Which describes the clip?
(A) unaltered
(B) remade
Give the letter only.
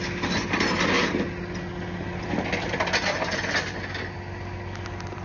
A